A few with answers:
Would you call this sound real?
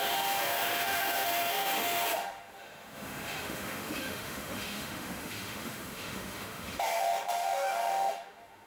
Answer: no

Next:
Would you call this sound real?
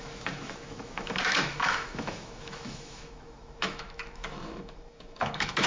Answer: no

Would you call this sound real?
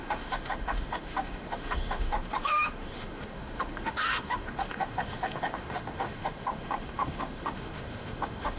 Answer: no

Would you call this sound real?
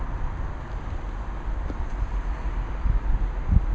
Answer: yes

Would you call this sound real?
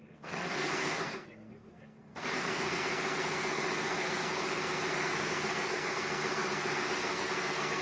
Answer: no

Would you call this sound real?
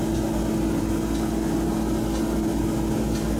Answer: yes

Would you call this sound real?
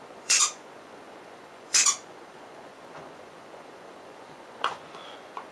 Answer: no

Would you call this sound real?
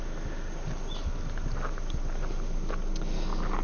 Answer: yes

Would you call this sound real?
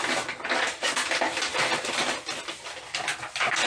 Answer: yes